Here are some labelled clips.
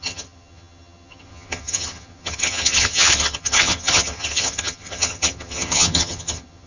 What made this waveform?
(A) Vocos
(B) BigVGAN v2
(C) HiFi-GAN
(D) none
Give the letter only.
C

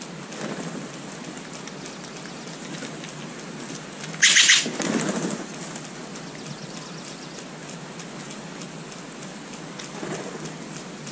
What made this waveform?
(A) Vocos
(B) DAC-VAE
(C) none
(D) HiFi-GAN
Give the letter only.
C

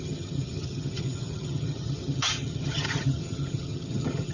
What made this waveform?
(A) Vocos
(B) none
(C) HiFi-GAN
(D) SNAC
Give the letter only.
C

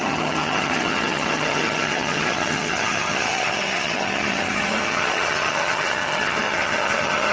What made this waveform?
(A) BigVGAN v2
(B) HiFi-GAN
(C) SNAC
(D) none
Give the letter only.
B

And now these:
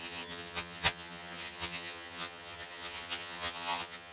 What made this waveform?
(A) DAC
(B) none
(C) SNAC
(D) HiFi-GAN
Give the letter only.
D